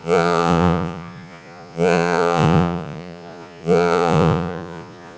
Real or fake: fake